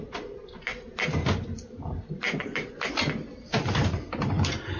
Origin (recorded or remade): recorded